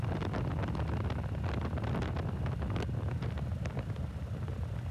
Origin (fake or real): real